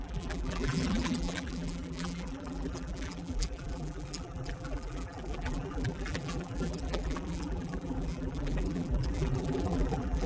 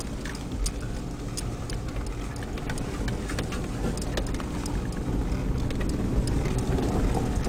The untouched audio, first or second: second